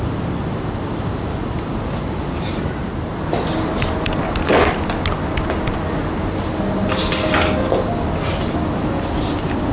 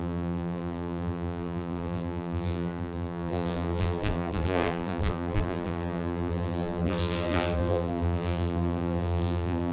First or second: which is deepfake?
second